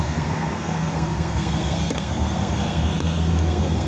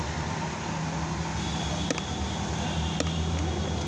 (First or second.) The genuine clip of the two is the second